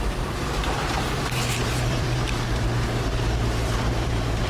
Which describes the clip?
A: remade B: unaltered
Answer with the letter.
A